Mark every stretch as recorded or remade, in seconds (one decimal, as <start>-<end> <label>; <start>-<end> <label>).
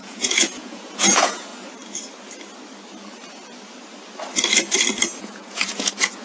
0.0-1.5 remade; 1.5-5.2 recorded; 5.2-6.2 remade